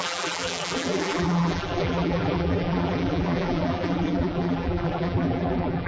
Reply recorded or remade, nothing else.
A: remade